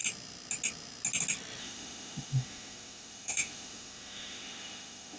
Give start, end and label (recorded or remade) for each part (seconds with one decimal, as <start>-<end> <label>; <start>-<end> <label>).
0.0-1.6 recorded; 1.6-5.2 remade